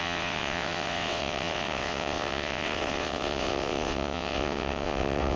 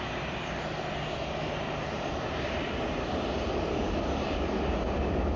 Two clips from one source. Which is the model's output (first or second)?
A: first